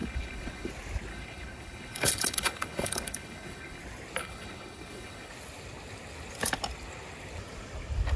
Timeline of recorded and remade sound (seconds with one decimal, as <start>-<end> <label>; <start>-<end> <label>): 0.0-0.7 remade; 0.7-1.1 recorded; 1.1-3.8 remade; 3.8-4.2 recorded; 4.2-5.3 remade; 5.3-8.2 recorded